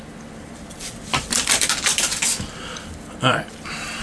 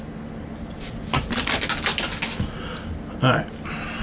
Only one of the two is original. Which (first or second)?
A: second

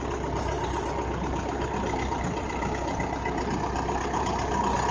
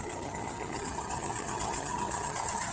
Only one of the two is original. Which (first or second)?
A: first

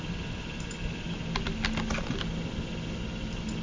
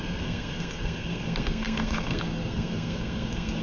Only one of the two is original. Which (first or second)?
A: first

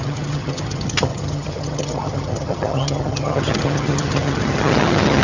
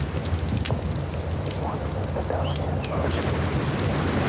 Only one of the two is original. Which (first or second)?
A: second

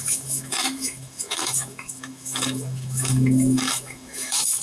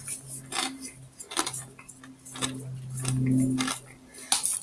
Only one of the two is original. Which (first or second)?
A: second